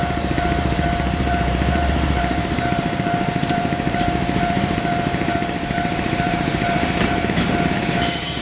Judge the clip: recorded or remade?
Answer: remade